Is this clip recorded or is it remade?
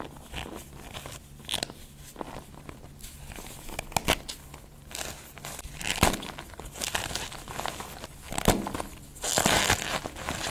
recorded